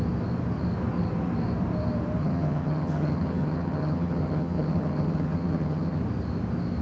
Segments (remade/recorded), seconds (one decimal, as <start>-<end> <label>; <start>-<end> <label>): 0.0-2.2 recorded; 2.2-6.0 remade; 6.0-6.8 recorded